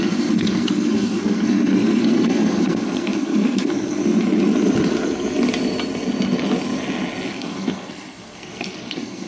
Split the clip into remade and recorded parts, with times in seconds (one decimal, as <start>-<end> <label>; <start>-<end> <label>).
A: 0.0-4.0 remade; 4.0-7.3 recorded; 7.3-9.3 remade